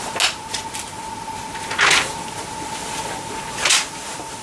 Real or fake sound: real